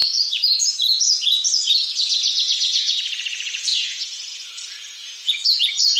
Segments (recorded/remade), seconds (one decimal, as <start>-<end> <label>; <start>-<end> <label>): 0.0-6.0 remade